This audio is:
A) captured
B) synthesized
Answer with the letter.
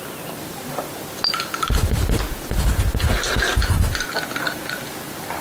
A